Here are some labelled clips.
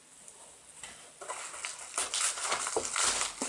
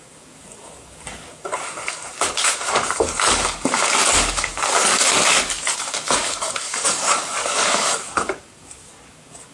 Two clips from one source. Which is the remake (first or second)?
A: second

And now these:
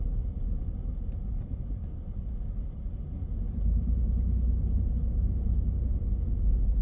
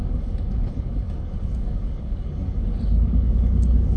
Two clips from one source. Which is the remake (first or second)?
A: second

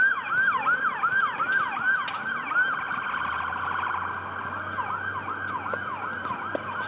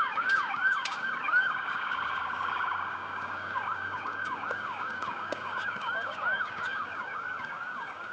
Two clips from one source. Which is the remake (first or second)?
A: second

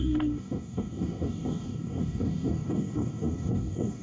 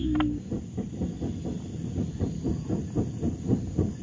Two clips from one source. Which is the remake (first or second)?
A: first